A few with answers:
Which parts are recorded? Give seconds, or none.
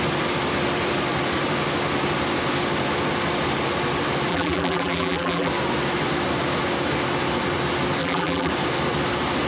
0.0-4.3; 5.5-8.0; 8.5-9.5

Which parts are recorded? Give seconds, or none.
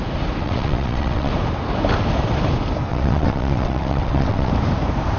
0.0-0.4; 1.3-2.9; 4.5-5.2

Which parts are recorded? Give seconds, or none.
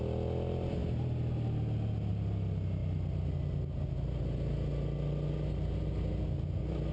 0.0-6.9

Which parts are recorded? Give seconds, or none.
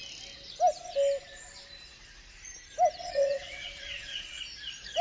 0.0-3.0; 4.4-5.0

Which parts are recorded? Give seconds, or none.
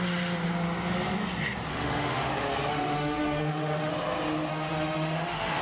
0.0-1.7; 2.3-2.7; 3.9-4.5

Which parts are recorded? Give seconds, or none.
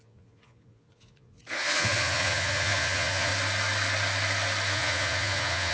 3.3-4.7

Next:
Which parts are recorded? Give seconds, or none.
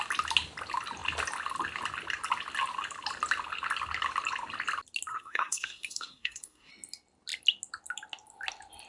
0.0-5.1; 6.7-8.9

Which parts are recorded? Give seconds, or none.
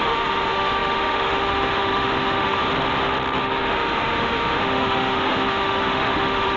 2.6-3.4